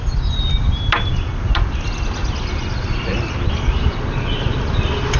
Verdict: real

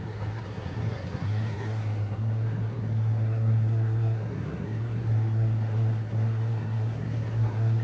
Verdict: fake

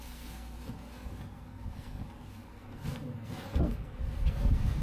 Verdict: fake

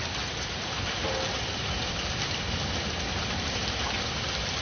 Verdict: real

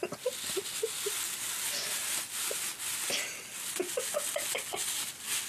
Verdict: real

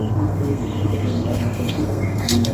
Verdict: fake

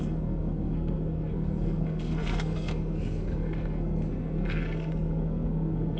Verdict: fake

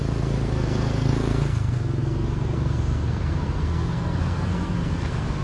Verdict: fake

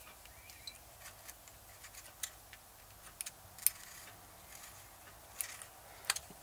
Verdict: real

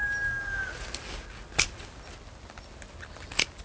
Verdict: real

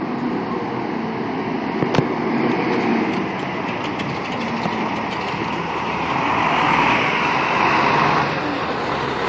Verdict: real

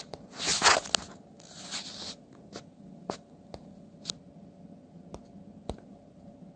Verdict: real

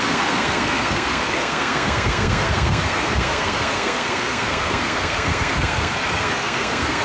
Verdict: fake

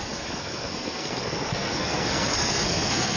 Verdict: fake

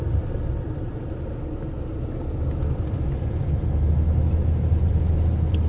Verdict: real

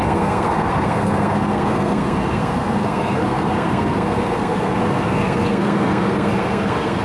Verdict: fake